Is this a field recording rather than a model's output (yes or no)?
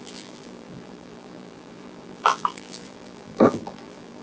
no